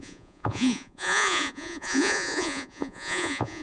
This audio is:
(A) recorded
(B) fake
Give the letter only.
B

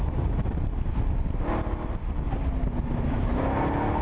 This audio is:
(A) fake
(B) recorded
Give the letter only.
B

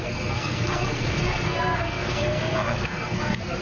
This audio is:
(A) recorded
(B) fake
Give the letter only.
B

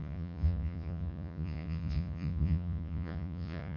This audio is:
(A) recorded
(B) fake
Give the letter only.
B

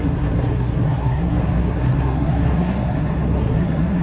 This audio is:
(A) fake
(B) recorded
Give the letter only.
A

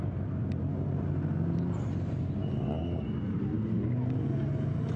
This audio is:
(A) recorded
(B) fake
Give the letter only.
A